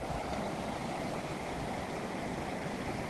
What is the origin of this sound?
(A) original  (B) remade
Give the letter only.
B